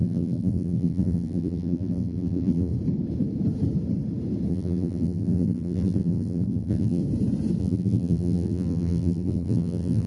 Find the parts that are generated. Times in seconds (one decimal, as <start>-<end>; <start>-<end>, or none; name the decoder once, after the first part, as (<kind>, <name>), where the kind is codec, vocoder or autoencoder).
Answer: 0.0-2.7 (vocoder, BigVGAN v2); 4.5-7.0; 7.6-10.1